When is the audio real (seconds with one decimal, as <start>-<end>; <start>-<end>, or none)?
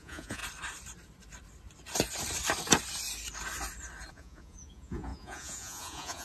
0.4-4.1